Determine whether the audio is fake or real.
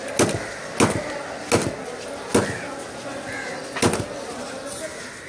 real